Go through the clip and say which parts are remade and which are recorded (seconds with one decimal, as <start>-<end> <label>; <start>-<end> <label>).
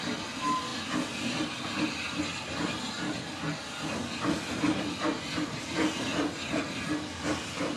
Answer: 0.0-7.8 recorded